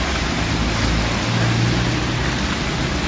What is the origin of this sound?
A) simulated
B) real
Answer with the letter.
B